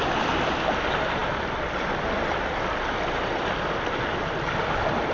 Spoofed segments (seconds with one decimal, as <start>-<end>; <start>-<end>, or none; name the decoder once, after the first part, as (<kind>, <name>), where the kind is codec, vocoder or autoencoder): none